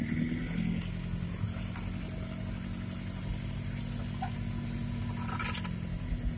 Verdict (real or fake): real